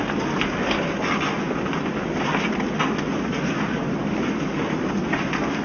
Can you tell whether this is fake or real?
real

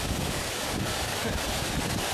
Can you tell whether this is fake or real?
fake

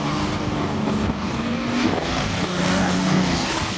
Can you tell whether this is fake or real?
fake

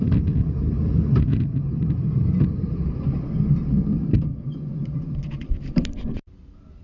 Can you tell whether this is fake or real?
real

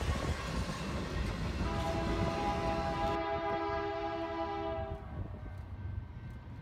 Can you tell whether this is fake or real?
real